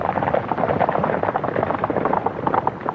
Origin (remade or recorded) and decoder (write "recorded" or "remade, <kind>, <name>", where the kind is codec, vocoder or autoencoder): recorded